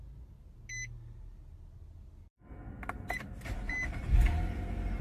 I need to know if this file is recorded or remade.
recorded